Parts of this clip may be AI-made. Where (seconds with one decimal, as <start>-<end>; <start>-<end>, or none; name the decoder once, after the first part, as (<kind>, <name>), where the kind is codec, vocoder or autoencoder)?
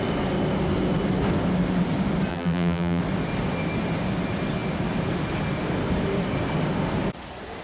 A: 2.3-3.0 (vocoder, BigVGAN v2)